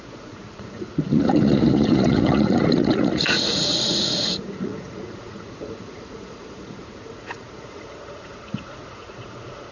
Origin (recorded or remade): remade